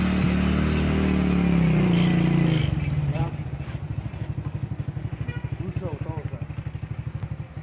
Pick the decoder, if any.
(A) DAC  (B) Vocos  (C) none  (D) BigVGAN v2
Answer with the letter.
C